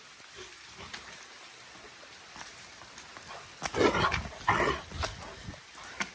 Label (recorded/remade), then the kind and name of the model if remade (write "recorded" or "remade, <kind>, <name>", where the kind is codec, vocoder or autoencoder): recorded